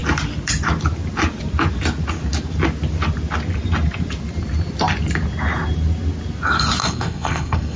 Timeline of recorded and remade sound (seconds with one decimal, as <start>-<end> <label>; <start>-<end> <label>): 0.0-6.8 recorded; 6.8-7.8 remade